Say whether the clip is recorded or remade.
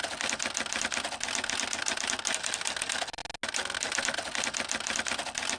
recorded